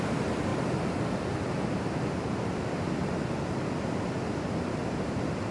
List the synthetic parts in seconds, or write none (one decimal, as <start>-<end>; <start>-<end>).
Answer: 0.5-3.7